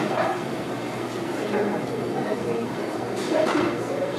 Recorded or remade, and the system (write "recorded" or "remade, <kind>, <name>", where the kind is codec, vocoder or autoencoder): remade, codec, SNAC